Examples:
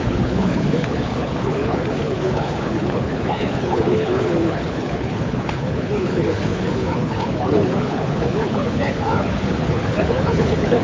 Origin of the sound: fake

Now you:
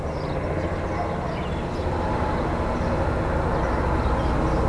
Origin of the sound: real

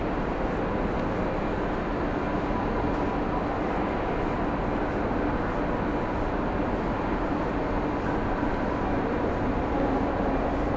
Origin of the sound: real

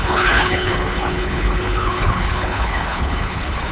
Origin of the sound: fake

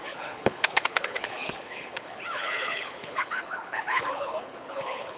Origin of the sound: fake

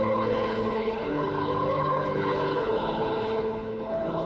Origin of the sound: fake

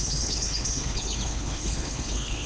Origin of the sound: fake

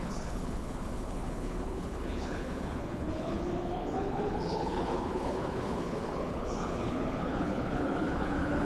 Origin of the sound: fake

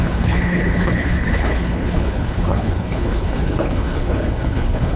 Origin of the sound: fake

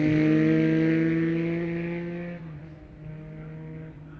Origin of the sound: real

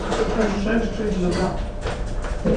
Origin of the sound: real